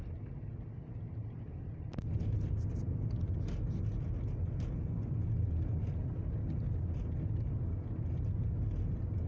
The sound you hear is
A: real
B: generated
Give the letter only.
A